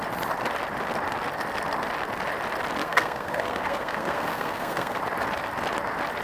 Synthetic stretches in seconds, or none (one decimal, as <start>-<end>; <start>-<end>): 2.8-5.0